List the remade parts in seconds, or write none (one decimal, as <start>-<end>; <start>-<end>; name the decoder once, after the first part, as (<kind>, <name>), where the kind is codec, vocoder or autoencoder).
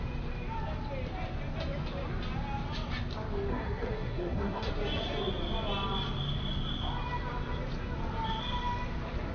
3.5-4.7 (codec, SNAC)